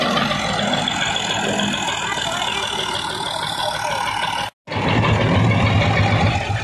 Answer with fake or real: real